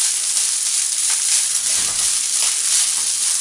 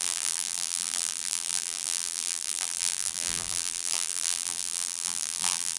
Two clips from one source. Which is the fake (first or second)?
second